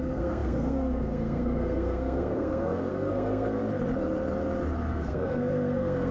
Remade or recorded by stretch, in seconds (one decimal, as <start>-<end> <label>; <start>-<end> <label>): 0.0-3.6 remade; 3.6-4.9 recorded; 4.9-6.1 remade